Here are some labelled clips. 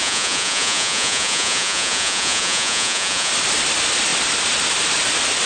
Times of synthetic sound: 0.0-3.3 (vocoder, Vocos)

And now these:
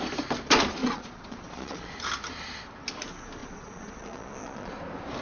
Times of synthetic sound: 0.8-1.9 (vocoder, Vocos); 3.4-4.7

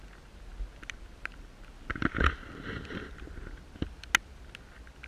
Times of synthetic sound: none

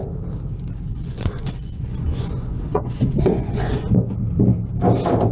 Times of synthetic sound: 0.9-4.1 (vocoder, Vocos)